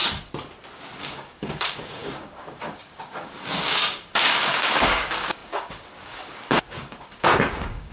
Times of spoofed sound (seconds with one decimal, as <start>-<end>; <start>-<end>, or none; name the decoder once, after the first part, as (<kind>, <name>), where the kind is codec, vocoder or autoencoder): 1.0-7.9 (codec, DAC)